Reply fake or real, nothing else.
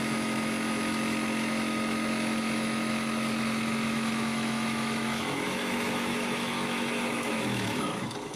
fake